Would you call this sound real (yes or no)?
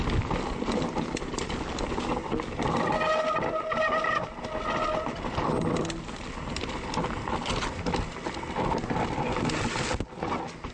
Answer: yes